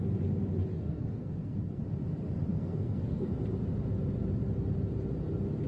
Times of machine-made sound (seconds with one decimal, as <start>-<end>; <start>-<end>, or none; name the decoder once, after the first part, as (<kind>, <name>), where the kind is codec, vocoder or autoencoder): 0.7-1.8 (codec, SNAC); 2.5-3.3